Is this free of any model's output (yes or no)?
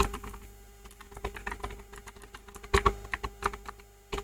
yes